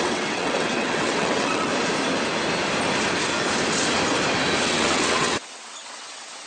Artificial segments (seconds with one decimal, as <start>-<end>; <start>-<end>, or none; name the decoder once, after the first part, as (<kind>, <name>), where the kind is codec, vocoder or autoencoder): 0.0-1.7 (vocoder, WaveNeXt); 4.6-6.5